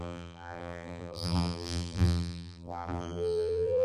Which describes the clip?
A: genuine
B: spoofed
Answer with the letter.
B